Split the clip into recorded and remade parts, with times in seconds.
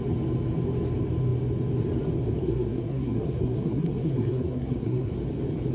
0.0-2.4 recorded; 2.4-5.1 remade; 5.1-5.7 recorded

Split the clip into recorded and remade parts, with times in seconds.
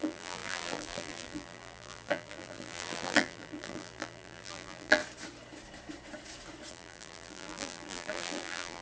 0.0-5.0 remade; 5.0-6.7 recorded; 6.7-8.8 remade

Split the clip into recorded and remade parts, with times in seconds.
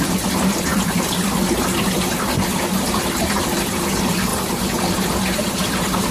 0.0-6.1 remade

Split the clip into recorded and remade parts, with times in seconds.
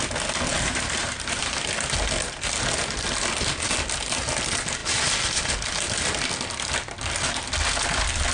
0.0-0.5 recorded; 0.5-1.4 remade; 1.4-8.3 recorded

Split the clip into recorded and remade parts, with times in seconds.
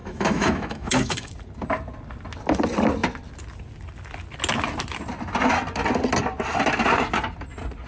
0.0-1.3 remade; 1.3-7.9 recorded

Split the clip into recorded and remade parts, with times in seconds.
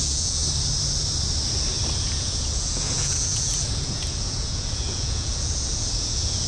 0.0-0.4 remade; 0.4-2.0 recorded; 2.0-6.5 remade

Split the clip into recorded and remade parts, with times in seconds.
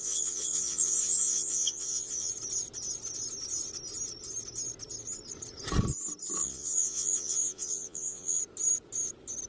0.0-2.3 remade; 2.3-6.4 recorded; 6.4-8.4 remade; 8.4-9.5 recorded